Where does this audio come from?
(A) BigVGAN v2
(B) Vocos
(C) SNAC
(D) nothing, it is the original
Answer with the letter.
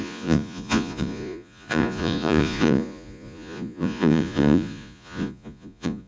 B